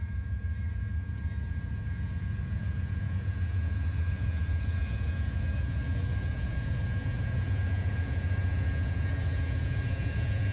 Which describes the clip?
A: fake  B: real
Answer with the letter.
A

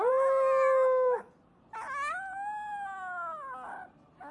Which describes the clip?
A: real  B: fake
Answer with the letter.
A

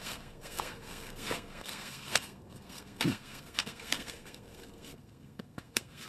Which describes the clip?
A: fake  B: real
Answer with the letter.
A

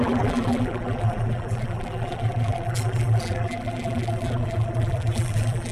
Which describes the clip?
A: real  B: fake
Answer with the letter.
B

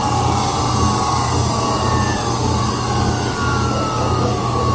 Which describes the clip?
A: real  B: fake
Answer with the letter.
A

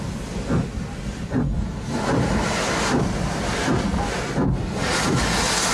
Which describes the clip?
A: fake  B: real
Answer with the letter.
B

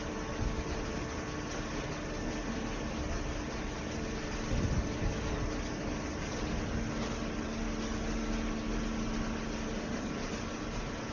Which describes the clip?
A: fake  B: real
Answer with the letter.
B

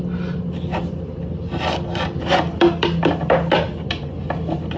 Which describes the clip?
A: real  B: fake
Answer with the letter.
A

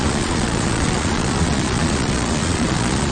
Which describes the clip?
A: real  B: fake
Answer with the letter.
B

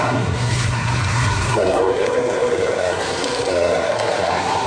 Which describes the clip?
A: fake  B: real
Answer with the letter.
A